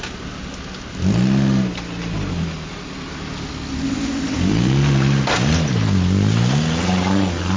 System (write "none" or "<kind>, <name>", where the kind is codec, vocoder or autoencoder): none